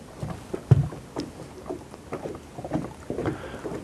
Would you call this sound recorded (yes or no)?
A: yes